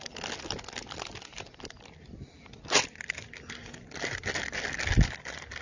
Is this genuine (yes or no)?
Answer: yes